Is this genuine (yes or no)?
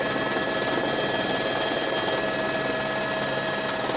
yes